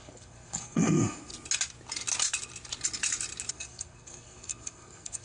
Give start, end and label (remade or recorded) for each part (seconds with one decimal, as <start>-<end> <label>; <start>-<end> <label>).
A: 0.0-1.3 remade; 1.3-3.5 recorded; 3.5-5.2 remade